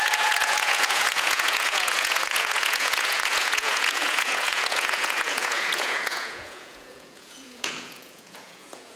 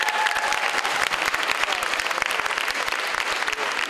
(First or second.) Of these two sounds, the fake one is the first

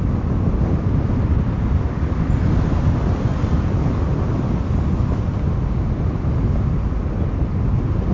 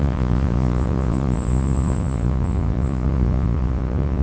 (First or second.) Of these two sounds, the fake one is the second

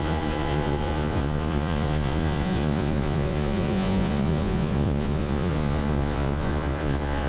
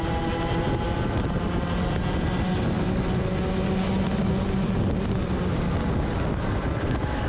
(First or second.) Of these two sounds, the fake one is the first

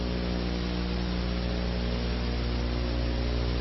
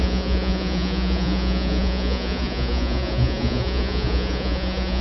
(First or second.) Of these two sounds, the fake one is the second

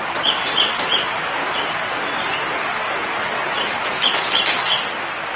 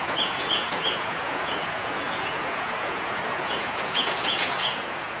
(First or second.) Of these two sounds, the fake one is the second